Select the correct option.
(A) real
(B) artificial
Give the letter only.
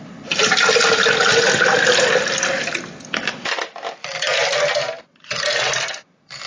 A